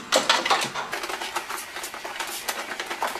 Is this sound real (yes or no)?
yes